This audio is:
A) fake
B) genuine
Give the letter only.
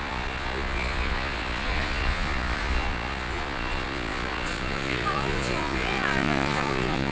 A